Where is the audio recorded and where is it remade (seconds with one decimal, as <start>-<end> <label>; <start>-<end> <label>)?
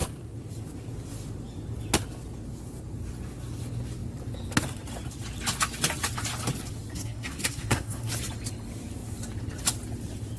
0.0-6.9 recorded; 6.9-8.1 remade; 8.1-10.4 recorded